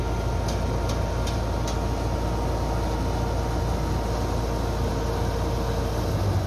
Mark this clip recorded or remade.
recorded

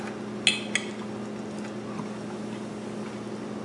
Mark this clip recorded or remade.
recorded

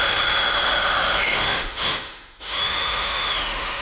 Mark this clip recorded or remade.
remade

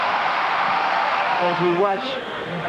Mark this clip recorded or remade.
remade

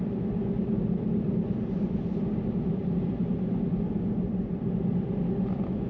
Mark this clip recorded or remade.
recorded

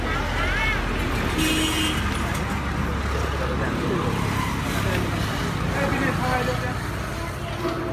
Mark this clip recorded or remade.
recorded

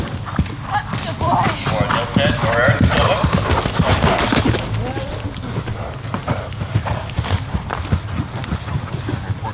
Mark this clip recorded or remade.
recorded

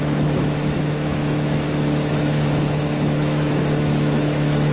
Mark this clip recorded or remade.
remade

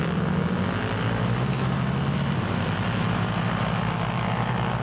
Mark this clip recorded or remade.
recorded